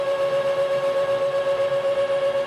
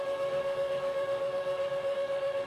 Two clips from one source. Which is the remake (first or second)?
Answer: second